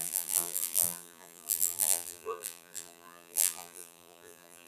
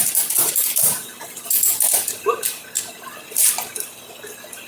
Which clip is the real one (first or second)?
second